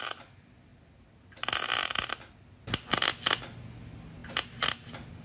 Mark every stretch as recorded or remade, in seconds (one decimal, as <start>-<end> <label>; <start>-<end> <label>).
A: 0.0-5.2 recorded